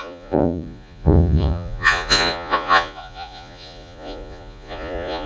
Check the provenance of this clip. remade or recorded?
remade